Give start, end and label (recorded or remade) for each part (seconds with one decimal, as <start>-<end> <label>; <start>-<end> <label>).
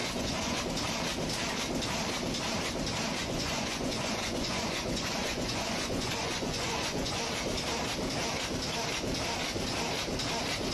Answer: 0.0-0.6 remade; 0.6-3.2 recorded; 3.2-7.2 remade; 7.2-10.7 recorded